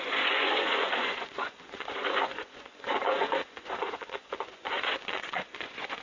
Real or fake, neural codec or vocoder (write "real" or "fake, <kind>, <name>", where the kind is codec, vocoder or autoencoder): fake, vocoder, Vocos